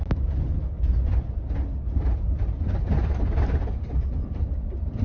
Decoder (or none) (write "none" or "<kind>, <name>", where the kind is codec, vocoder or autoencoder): none